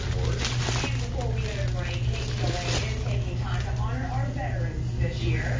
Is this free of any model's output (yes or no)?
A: yes